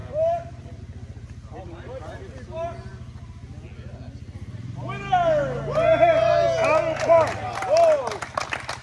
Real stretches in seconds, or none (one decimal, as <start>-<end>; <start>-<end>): 0.8-8.8